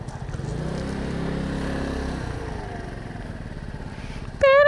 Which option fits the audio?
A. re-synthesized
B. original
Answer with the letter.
B